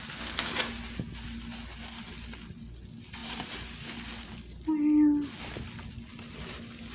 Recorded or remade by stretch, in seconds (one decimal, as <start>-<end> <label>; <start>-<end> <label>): 0.0-6.9 recorded